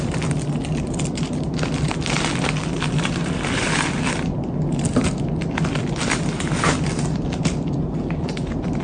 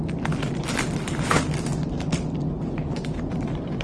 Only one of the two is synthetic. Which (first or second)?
first